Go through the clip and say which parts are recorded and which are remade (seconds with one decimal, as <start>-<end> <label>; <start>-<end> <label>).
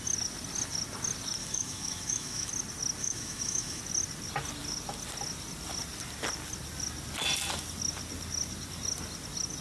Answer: 0.0-1.4 recorded; 1.4-2.5 remade; 2.5-3.0 recorded; 3.0-3.8 remade; 3.8-9.6 recorded